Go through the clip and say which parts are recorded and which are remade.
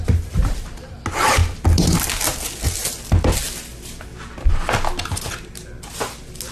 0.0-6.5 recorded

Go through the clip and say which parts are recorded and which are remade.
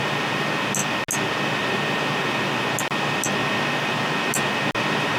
0.0-5.2 recorded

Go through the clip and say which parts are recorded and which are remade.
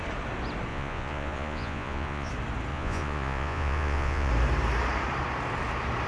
0.0-0.7 recorded; 0.7-2.3 remade; 2.3-2.7 recorded; 2.7-4.3 remade; 4.3-6.1 recorded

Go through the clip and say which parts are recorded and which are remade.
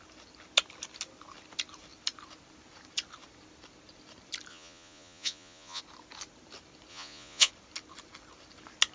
0.0-4.5 recorded; 4.5-5.8 remade; 5.8-6.9 recorded; 6.9-7.5 remade; 7.5-8.9 recorded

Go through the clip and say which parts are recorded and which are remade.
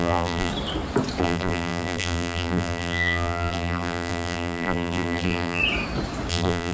0.0-0.5 remade; 0.5-1.2 recorded; 1.2-5.6 remade; 5.6-6.3 recorded; 6.3-6.7 remade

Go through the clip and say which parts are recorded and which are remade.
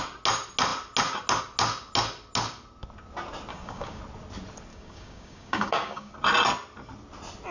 0.0-3.5 recorded; 3.5-4.0 remade; 4.0-4.7 recorded; 4.7-6.1 remade; 6.1-7.5 recorded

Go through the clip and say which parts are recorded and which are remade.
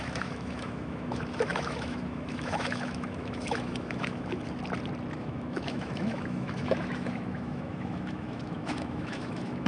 0.0-4.6 remade; 4.6-5.2 recorded; 5.2-9.7 remade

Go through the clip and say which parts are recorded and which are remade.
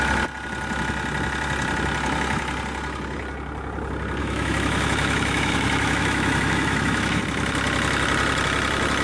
0.0-4.2 recorded; 4.2-7.2 remade; 7.2-9.0 recorded